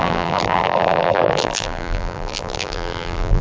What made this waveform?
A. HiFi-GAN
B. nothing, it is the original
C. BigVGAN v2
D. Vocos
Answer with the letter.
C